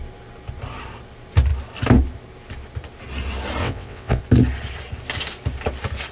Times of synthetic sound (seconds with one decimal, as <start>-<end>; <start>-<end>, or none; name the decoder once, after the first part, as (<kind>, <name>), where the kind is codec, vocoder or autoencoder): 3.6-4.2 (vocoder, WaveNeXt)